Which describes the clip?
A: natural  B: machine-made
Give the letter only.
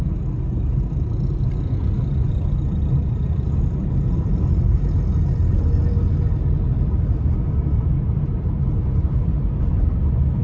A